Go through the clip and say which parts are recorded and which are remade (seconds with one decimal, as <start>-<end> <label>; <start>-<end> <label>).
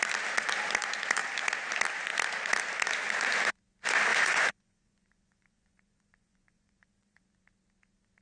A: 0.0-4.1 recorded; 4.1-7.2 remade; 7.2-8.2 recorded